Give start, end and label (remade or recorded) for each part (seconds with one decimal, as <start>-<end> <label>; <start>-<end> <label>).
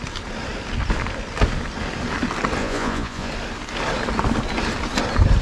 0.0-2.6 recorded; 2.6-3.3 remade; 3.3-5.4 recorded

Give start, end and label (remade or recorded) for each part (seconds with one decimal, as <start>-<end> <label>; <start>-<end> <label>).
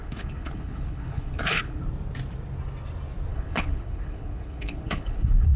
0.0-1.8 remade; 1.8-3.3 recorded; 3.3-5.6 remade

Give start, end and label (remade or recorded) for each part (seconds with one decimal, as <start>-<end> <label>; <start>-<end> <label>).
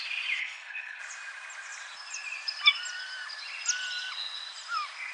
0.0-0.4 recorded; 0.4-1.0 remade; 1.0-5.1 recorded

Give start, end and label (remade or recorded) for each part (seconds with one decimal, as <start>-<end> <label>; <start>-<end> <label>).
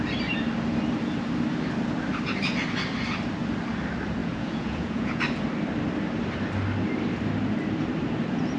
0.0-4.2 recorded; 4.2-5.2 remade; 5.2-8.6 recorded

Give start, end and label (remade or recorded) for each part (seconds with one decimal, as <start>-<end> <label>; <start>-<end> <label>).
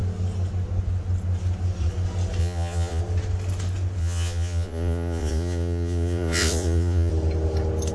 0.0-2.4 recorded; 2.4-3.0 remade; 3.0-4.0 recorded; 4.0-7.1 remade; 7.1-7.9 recorded